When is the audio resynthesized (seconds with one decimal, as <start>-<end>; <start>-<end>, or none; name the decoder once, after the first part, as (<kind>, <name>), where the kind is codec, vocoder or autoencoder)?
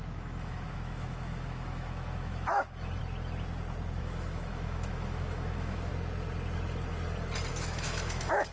0.0-3.0 (autoencoder, DAC-VAE); 4.0-5.9; 7.5-8.5